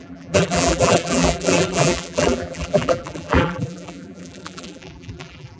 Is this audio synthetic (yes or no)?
yes